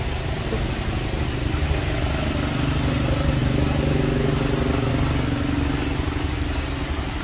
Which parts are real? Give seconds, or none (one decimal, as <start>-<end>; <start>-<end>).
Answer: 0.0-7.2